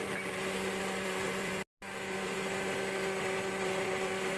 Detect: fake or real real